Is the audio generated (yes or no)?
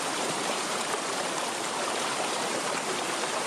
yes